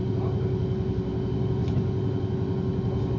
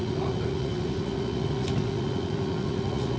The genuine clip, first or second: first